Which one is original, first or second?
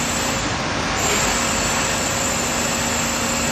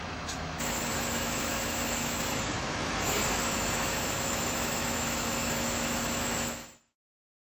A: first